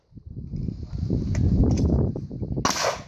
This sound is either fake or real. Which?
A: real